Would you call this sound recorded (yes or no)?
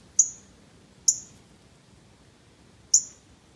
yes